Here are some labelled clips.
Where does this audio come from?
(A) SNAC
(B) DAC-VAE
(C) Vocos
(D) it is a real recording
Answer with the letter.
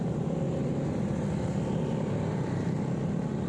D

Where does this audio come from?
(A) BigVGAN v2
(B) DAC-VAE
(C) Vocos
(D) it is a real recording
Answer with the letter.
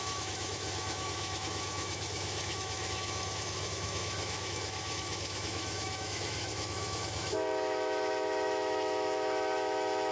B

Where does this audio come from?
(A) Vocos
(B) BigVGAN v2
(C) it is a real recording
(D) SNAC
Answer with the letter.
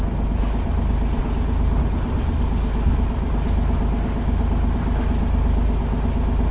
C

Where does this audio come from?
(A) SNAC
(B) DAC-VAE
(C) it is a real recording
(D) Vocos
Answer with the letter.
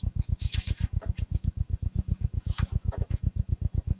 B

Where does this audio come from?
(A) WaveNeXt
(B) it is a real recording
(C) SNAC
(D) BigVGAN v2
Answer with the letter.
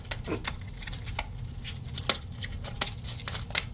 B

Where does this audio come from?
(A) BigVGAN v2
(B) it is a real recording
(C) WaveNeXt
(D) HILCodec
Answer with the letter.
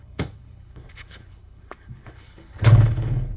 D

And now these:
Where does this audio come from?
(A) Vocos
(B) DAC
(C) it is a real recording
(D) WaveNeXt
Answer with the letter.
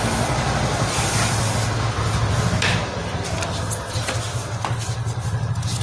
C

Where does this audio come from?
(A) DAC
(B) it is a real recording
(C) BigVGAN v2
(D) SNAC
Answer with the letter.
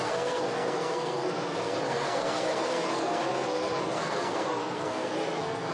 D